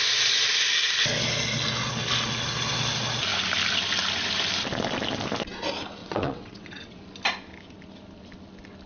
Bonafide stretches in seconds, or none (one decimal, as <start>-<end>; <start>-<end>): 0.0-6.0; 7.0-8.9